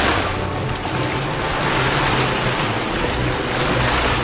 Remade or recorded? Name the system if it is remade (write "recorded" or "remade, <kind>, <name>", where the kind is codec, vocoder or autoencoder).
recorded